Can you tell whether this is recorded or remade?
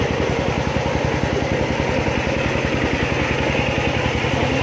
recorded